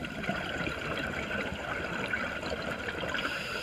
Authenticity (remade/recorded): recorded